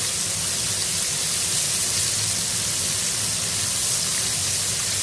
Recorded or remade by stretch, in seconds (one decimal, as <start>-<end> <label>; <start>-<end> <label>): 0.0-5.0 recorded